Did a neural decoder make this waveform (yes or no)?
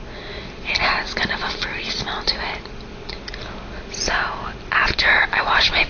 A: no